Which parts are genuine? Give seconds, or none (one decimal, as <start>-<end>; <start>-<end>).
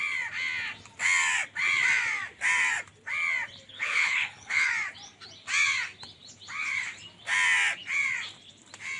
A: 0.0-3.7; 4.7-9.0